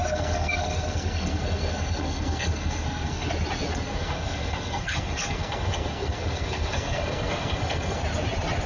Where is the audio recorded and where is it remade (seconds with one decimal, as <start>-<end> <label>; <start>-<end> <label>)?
0.0-3.3 remade; 3.3-3.7 recorded; 3.7-8.0 remade; 8.0-8.7 recorded